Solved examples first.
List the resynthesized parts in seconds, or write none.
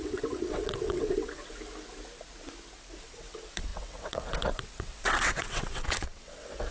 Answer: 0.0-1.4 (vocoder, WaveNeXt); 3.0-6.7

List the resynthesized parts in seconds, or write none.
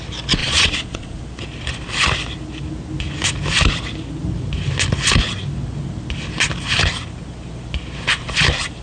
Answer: 0.4-1.2 (vocoder, Vocos)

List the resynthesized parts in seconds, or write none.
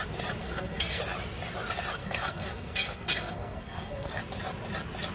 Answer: 0.4-1.0 (codec, SNAC); 2.0-4.2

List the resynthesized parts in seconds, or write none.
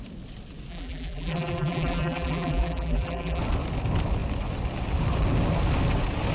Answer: 0.7-3.4 (vocoder, BigVGAN v2)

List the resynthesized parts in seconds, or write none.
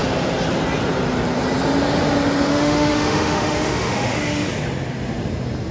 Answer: 2.5-4.5 (autoencoder, DAC-VAE)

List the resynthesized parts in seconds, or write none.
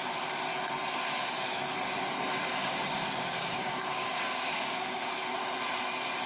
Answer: 2.6-5.0 (codec, DAC)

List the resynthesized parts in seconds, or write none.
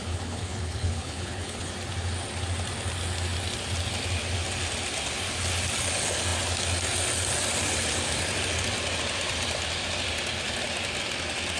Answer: 0.0-1.7 (codec, HILCodec)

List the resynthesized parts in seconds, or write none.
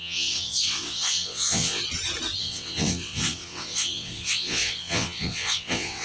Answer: 0.0-1.8 (vocoder, WaveNeXt); 2.4-6.0